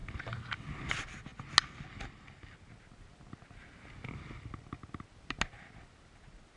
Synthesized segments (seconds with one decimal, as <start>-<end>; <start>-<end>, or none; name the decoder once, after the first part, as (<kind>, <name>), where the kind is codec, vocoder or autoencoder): none